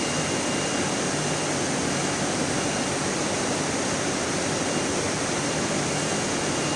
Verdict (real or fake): fake